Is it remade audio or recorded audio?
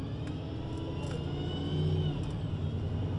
recorded